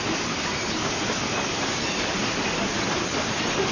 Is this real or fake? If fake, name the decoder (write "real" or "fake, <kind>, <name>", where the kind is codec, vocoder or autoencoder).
real